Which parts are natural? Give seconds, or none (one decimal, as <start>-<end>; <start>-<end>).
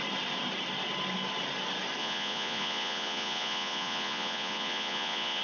0.0-2.0